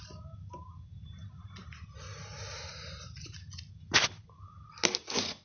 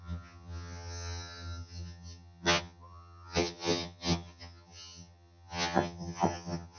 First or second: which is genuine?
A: first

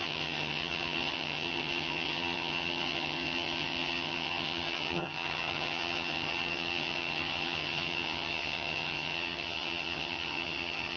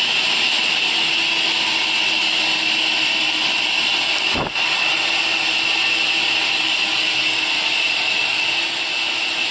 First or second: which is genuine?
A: second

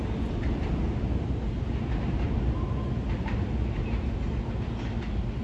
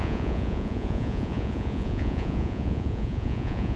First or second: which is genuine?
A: first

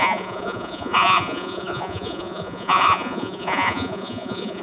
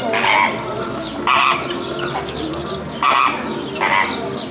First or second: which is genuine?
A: second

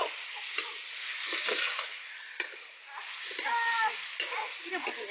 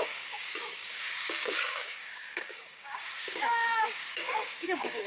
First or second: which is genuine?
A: first